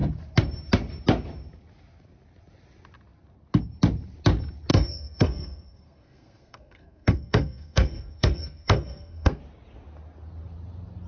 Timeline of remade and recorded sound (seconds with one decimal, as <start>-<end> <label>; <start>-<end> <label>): 0.0-4.7 recorded; 4.7-9.4 remade; 9.4-11.1 recorded